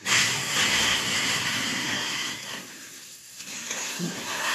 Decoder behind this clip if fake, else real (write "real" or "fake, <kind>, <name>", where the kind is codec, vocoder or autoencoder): fake, codec, SNAC